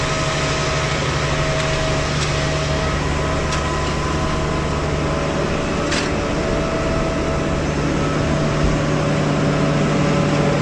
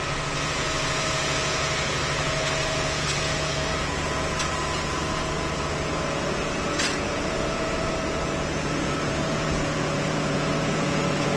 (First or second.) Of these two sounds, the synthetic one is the second